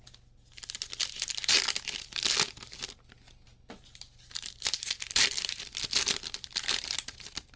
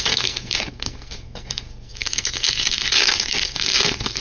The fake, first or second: second